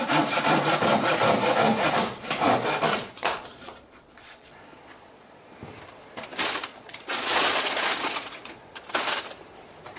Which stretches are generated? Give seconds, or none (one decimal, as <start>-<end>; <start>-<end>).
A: 2.9-5.5; 6.7-8.7